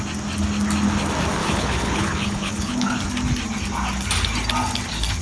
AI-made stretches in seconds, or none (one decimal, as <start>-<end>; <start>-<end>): 1.4-3.0